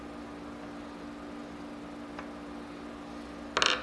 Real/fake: real